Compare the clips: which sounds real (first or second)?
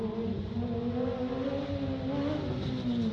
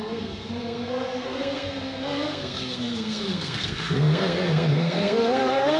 first